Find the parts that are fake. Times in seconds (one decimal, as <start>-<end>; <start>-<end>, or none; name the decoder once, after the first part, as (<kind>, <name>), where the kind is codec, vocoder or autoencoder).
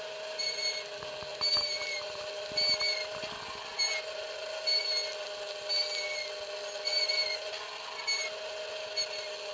1.3-2.3 (vocoder, BigVGAN v2)